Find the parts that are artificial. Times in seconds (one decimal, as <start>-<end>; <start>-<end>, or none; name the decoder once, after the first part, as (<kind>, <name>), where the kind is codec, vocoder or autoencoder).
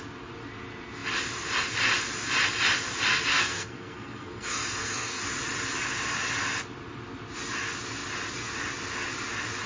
3.3-5.2 (codec, SNAC)